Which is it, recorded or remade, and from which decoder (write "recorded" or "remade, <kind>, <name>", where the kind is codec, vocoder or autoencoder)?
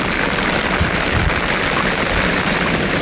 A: recorded